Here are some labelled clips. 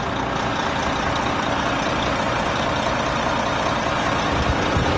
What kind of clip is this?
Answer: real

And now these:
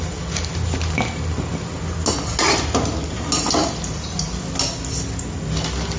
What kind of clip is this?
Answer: real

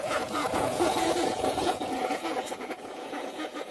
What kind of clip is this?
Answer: fake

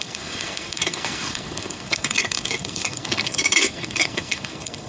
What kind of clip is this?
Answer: fake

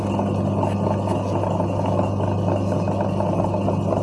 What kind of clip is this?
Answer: real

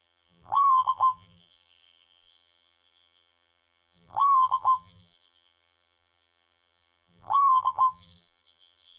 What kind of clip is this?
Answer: fake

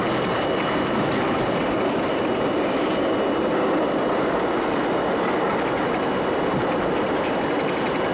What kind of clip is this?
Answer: real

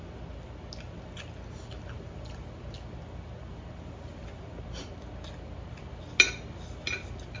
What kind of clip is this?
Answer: real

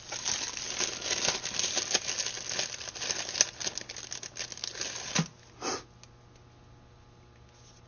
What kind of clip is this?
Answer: real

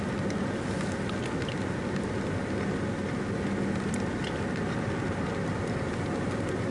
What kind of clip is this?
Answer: real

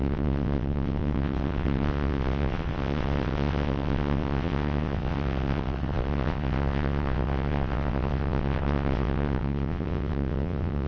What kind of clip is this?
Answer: fake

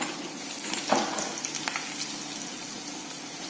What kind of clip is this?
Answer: real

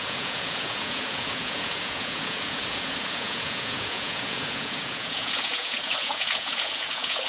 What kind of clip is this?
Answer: fake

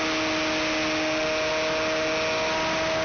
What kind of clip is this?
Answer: real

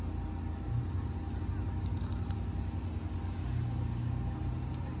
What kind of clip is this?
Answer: real